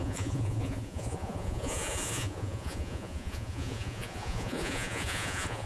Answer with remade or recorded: remade